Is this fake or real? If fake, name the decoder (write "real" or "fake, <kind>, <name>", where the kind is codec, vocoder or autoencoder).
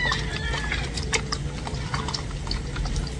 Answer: real